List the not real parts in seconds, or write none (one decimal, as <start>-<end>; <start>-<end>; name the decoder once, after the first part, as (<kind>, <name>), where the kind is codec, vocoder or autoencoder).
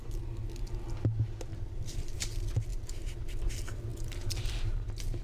1.5-2.2 (vocoder, BigVGAN v2); 2.7-3.4; 3.9-4.7